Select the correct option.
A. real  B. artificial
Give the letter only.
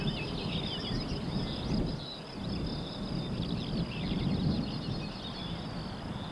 A